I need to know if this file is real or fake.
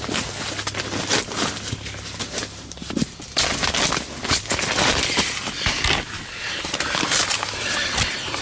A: real